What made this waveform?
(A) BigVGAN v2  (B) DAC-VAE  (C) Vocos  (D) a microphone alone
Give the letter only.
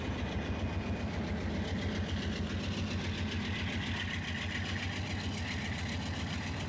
D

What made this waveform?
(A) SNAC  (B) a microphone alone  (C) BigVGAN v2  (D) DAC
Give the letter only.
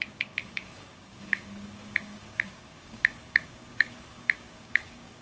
D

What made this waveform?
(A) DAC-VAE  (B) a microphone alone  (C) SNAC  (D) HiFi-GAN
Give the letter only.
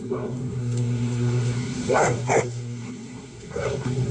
C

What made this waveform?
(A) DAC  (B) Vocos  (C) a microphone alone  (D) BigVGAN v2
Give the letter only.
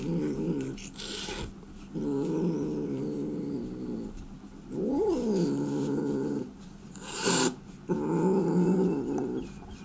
C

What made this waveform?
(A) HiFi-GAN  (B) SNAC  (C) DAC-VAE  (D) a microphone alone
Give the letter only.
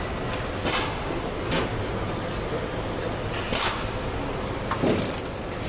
D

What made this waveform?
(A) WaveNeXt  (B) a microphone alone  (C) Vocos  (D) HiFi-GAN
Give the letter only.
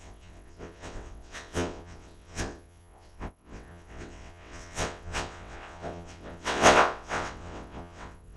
A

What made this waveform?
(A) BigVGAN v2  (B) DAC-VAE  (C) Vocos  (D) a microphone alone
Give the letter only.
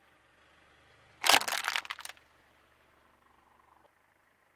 D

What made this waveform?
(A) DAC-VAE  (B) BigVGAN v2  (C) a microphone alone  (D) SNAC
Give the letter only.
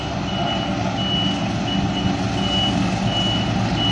C